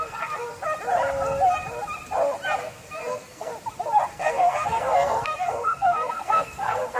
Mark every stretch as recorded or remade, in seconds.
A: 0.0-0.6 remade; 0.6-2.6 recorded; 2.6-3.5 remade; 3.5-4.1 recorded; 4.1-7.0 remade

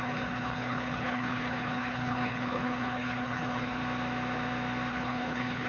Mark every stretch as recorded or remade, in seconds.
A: 0.0-3.8 remade; 3.8-4.9 recorded; 4.9-5.7 remade

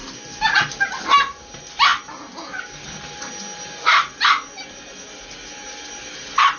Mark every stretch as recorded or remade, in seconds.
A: 0.0-6.6 recorded

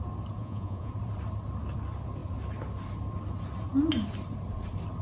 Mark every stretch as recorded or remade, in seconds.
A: 0.0-0.4 recorded; 0.4-0.9 remade; 0.9-5.0 recorded

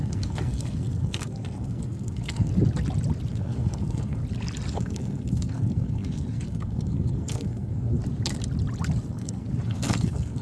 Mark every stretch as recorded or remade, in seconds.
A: 0.0-2.5 remade; 2.5-3.3 recorded; 3.3-4.2 remade; 4.2-4.7 recorded; 4.7-8.0 remade; 8.0-9.1 recorded; 9.1-10.4 remade

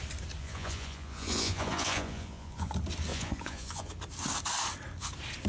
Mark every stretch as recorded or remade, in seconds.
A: 0.0-0.4 recorded; 0.4-2.7 remade; 2.7-3.1 recorded; 3.1-3.9 remade; 3.9-5.5 recorded

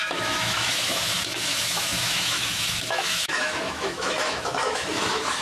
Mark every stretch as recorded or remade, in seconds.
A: 0.0-5.4 remade